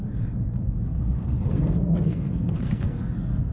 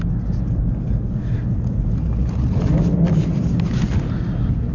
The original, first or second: second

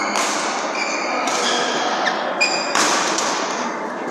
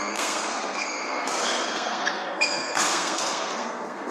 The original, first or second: first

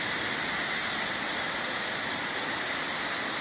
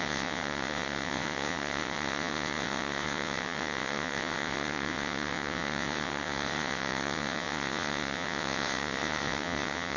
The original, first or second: first